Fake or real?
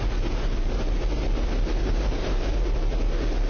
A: real